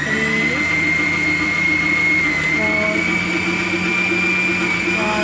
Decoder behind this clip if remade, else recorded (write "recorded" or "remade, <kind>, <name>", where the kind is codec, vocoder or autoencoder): recorded